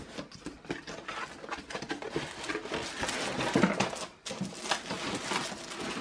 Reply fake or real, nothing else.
real